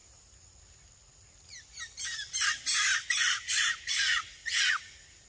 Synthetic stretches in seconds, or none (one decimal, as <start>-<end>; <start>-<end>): 3.2-5.3